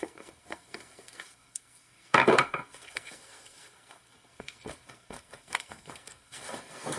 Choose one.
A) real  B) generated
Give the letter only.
B